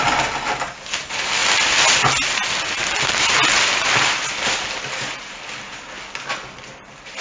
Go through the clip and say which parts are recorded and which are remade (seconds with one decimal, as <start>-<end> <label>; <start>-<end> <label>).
0.0-7.2 recorded